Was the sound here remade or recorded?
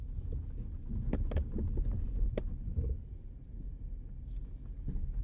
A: recorded